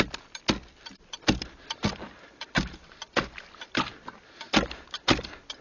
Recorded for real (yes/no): yes